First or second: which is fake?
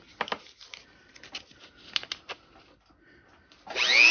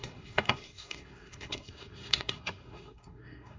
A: second